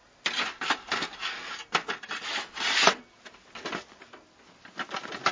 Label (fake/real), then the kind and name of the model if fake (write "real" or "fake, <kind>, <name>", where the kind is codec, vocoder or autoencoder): real